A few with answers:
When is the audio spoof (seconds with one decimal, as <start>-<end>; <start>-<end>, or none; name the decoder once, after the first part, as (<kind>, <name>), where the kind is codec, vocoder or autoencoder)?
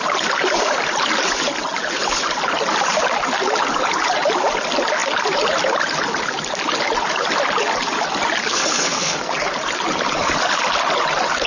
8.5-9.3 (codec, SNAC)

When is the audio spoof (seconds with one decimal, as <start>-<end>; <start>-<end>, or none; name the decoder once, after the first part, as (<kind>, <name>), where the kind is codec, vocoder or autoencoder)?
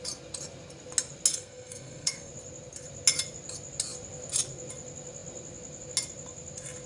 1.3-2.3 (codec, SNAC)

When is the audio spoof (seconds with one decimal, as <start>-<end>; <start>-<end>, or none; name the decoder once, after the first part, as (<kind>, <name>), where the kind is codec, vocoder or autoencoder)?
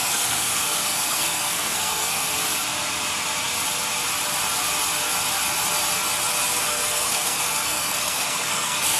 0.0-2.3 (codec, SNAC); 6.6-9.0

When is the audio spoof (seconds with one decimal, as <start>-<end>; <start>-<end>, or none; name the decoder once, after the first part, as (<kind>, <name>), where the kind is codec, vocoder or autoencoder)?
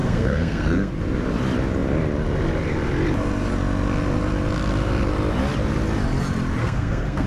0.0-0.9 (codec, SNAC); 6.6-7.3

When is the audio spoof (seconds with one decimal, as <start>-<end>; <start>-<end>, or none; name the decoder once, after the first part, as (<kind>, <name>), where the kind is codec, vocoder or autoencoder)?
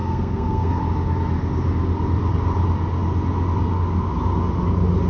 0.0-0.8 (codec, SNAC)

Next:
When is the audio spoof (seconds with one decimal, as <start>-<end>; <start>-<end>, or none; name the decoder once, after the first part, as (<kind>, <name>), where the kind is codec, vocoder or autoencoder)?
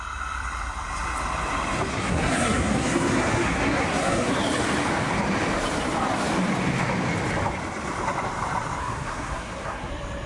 1.9-4.3 (codec, SNAC); 8.8-9.9